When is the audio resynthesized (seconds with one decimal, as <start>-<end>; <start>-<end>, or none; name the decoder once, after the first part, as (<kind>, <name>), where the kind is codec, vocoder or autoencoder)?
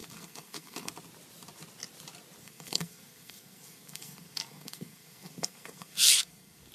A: 0.0-0.9 (codec, SNAC); 2.4-6.7